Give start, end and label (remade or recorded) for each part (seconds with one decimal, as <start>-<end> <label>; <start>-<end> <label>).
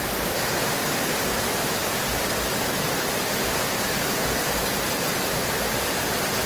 0.0-6.5 recorded